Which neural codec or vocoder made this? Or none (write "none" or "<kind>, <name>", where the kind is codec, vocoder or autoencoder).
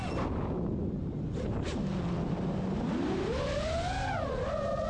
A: none